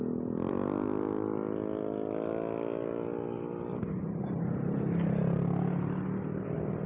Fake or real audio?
real